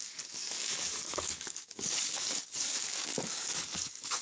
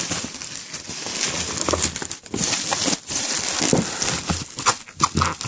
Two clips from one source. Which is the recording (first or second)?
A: second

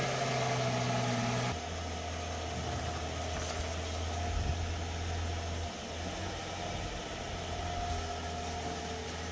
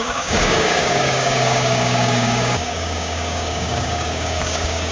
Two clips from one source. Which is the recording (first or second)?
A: first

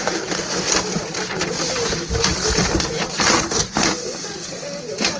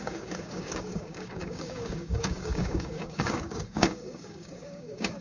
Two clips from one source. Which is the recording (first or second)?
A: first